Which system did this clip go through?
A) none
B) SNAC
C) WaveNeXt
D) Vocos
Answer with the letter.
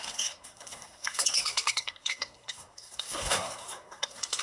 B